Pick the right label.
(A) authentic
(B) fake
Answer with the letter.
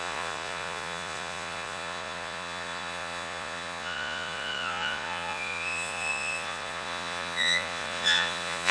B